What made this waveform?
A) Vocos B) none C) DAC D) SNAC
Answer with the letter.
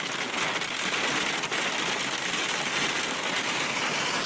B